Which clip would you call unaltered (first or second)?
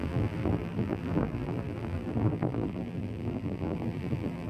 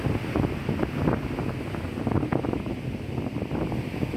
second